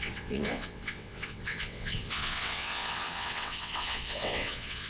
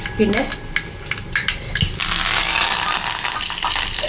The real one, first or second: second